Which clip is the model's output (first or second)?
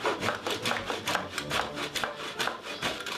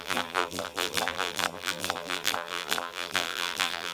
second